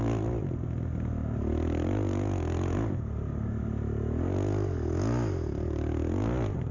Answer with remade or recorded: recorded